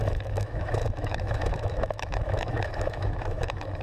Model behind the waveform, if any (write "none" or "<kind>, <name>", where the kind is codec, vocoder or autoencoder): autoencoder, DAC-VAE